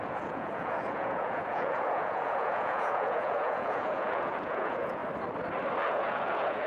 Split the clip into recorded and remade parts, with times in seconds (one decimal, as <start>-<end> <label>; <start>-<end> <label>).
0.0-5.0 remade; 5.0-5.9 recorded; 5.9-6.7 remade